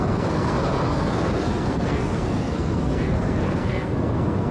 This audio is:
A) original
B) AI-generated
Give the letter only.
B